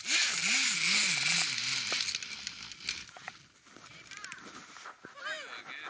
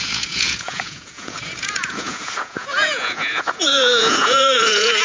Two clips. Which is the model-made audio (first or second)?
second